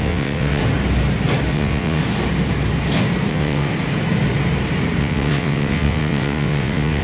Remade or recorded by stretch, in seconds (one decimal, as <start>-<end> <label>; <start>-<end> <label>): 0.0-0.6 remade; 0.6-1.5 recorded; 1.5-2.0 remade; 2.0-3.3 recorded; 3.3-3.7 remade; 3.7-5.0 recorded; 5.0-7.0 remade